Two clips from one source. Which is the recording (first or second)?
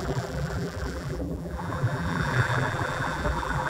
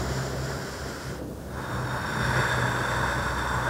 second